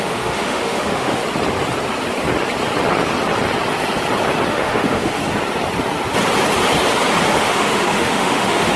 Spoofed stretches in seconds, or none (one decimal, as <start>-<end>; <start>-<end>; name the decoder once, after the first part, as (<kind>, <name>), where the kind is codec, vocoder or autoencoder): 0.0-1.2 (autoencoder, DAC-VAE); 4.5-5.2; 7.3-8.8